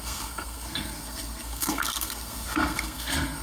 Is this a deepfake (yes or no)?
yes